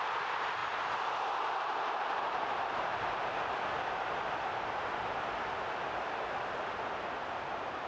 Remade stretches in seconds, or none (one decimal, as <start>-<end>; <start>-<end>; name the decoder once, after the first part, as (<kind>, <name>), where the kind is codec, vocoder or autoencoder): 0.6-3.4 (vocoder, BigVGAN v2)